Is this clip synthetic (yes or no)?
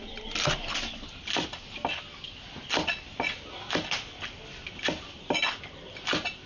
no